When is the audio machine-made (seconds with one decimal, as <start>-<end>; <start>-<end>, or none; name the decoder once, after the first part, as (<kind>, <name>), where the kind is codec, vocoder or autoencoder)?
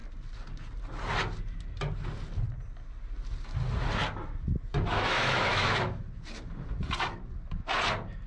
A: 4.7-6.0 (autoencoder, DAC-VAE)